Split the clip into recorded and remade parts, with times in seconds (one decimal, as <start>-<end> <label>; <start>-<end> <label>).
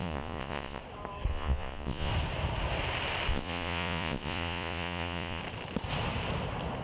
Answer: 0.0-0.8 remade; 0.8-1.3 recorded; 1.3-2.1 remade; 2.1-3.3 recorded; 3.3-5.4 remade; 5.4-6.8 recorded